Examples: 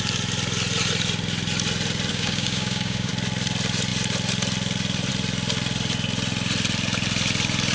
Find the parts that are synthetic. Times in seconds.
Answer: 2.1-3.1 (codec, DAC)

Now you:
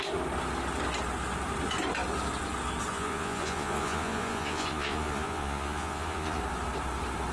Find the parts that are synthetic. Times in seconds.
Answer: 2.9-6.4 (vocoder, Vocos)

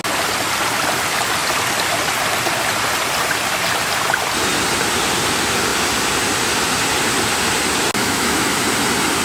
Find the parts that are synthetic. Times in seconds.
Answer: 8.0-8.6 (autoencoder, DAC-VAE)

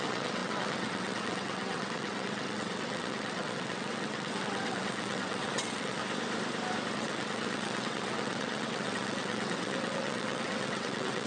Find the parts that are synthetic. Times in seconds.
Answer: 0.0-6.0 (vocoder, WaveNeXt); 6.9-11.3

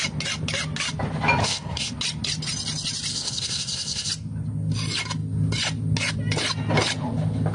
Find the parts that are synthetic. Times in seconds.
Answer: 1.4-1.9 (codec, SNAC); 3.1-4.1

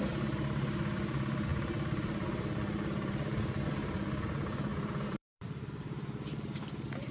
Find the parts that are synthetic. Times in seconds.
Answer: 0.0-7.1 (vocoder, BigVGAN v2)

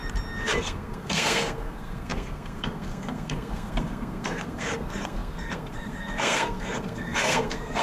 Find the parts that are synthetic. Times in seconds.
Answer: 0.6-7.8 (codec, SNAC)